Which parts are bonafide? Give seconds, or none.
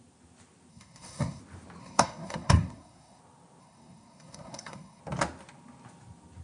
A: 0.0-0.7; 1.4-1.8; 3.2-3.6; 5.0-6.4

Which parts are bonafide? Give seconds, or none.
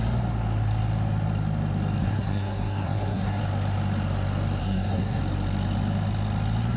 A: 0.0-2.0; 3.4-4.6; 5.2-6.8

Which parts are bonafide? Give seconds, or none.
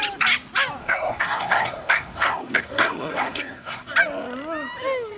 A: 0.0-0.8; 3.9-5.2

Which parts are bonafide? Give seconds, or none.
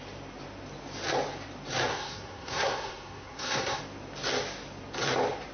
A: 0.0-1.9; 3.8-5.5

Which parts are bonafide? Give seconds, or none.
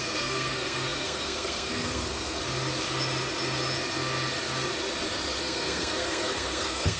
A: 2.4-5.4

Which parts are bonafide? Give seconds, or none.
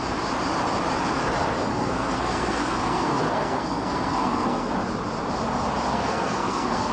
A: 0.0-1.7; 4.7-5.9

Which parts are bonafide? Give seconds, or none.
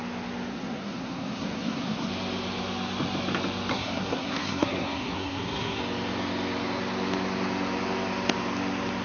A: 0.0-0.5; 2.1-3.7; 5.8-9.0